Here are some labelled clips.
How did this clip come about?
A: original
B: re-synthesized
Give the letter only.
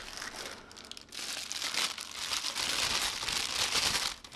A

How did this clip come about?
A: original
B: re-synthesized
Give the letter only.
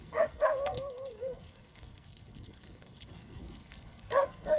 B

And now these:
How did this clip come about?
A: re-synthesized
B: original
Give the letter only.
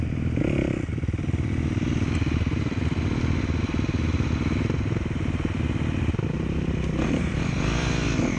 B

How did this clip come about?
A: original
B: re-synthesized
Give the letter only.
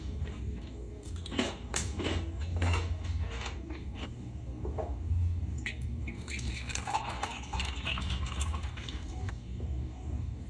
B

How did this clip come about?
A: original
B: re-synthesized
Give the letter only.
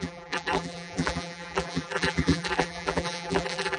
B